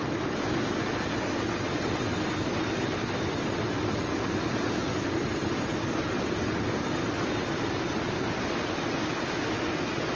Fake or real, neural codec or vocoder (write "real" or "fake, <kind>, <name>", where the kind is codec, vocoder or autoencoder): real